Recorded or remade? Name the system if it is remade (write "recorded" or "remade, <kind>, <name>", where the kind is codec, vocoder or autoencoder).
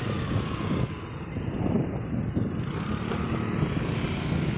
recorded